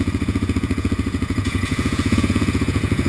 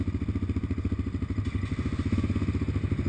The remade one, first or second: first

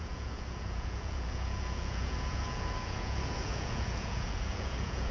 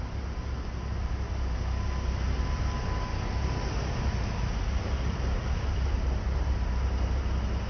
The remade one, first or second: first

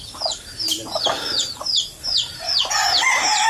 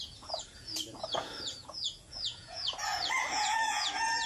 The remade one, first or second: second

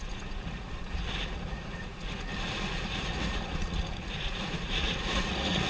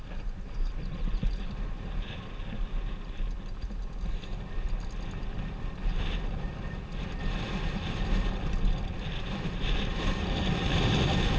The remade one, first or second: first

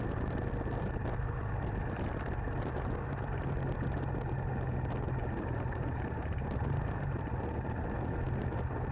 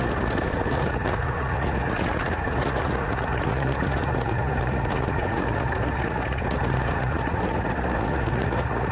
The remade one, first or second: second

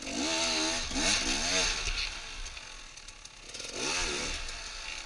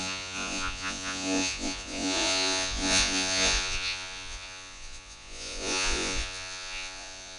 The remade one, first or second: second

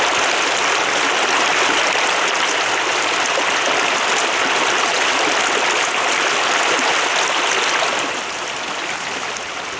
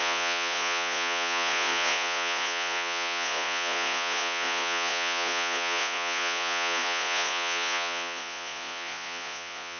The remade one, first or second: second